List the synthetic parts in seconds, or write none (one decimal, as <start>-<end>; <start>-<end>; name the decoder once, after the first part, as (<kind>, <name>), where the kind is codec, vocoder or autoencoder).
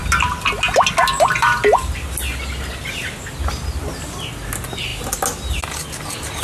none